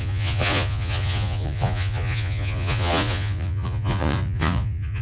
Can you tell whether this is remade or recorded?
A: remade